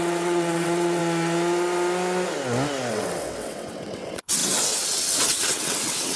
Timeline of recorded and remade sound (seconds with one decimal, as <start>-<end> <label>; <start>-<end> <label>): 0.0-1.0 remade; 1.0-2.9 recorded; 2.9-6.2 remade